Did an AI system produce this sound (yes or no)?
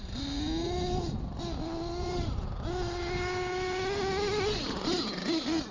no